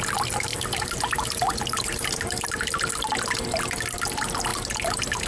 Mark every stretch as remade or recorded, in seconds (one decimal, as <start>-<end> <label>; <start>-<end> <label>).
0.0-0.5 recorded; 0.5-2.8 remade; 2.8-5.3 recorded